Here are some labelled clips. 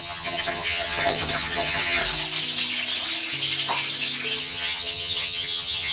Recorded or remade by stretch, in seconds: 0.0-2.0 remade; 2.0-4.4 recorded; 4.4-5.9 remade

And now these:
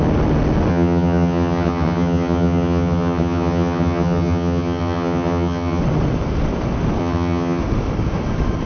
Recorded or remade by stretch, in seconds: 0.0-0.7 recorded; 0.7-5.8 remade; 5.8-7.0 recorded; 7.0-7.6 remade; 7.6-8.7 recorded

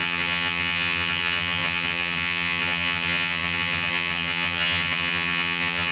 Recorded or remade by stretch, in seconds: 0.0-5.9 remade

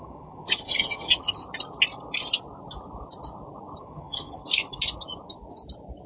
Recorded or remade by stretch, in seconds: 0.0-1.4 remade; 1.4-3.8 recorded; 3.8-4.4 remade; 4.4-6.1 recorded

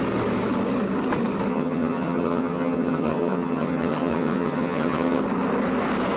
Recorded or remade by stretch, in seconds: 0.0-1.5 recorded; 1.5-5.2 remade; 5.2-6.2 recorded

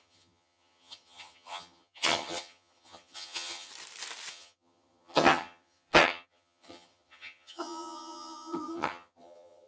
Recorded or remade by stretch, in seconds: 0.0-3.7 remade; 3.7-4.3 recorded; 4.3-9.7 remade

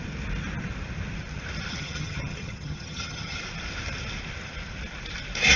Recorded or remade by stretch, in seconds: 0.0-1.7 recorded; 1.7-3.4 remade; 3.4-5.6 recorded

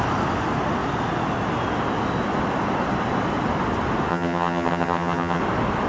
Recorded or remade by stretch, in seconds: 0.0-4.1 recorded; 4.1-5.4 remade; 5.4-5.9 recorded